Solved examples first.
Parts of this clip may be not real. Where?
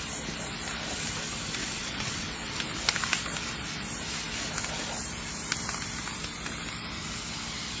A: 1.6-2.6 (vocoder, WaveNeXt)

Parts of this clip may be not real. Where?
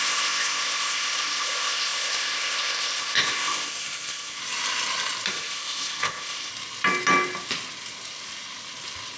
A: 0.0-4.4 (codec, ZipCodec); 5.3-6.5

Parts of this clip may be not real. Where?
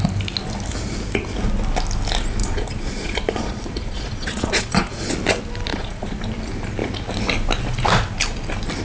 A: 2.4-5.1 (vocoder, Vocos); 5.7-6.2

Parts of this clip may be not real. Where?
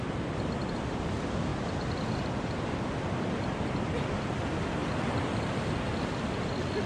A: 1.5-3.7 (vocoder, BigVGAN v2); 4.8-5.6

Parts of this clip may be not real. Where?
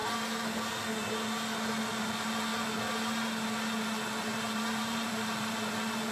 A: 2.0-2.5 (vocoder, BigVGAN v2); 4.2-6.1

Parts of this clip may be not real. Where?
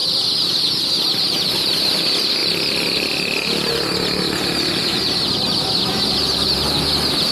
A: 0.0-0.6 (vocoder, BigVGAN v2); 2.4-6.8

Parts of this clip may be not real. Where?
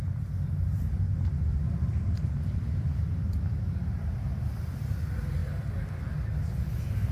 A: 0.7-5.0 (vocoder, BigVGAN v2)